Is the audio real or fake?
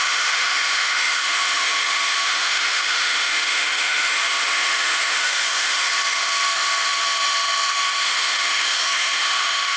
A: fake